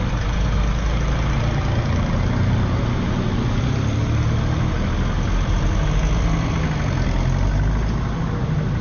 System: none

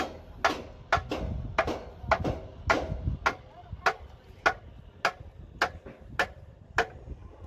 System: none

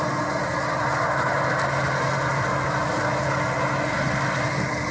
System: none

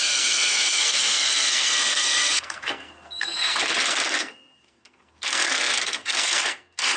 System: codec, SNAC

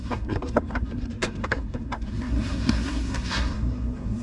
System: codec, SNAC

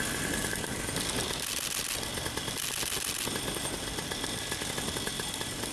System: none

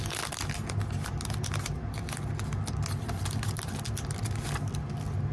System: none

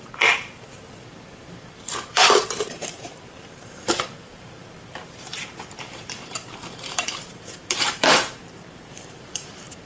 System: vocoder, BigVGAN v2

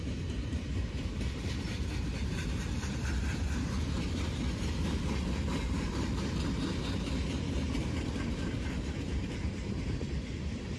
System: vocoder, BigVGAN v2